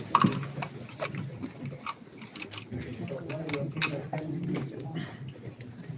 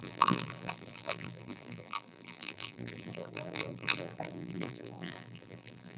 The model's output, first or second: second